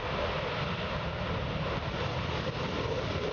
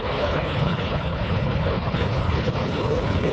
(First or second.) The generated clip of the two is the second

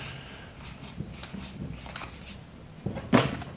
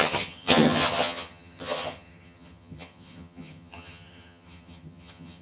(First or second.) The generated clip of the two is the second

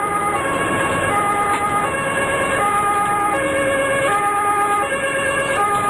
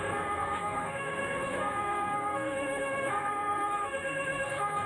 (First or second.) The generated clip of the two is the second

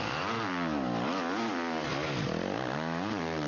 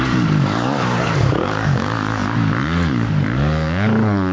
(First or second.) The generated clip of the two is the second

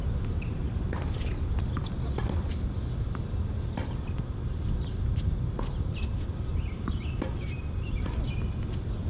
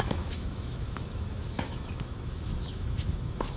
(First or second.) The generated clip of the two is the second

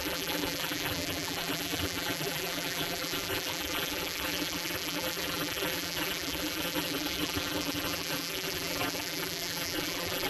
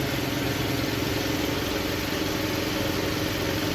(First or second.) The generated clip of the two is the first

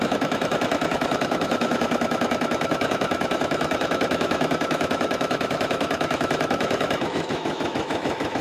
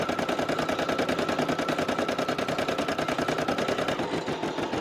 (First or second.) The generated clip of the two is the first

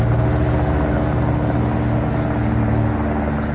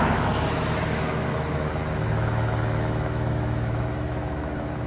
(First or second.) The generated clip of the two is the second